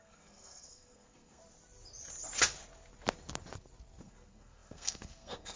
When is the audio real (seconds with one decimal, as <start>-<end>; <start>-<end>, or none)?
1.4-4.0